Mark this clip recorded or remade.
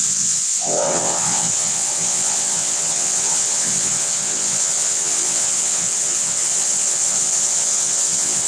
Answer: remade